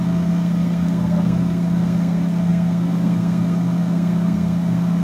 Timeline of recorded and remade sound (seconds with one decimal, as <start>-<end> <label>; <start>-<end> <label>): 0.0-5.0 remade